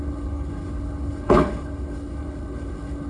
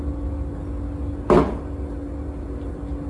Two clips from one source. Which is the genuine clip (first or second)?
second